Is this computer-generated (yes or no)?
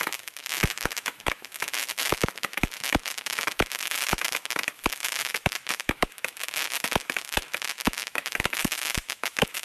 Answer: yes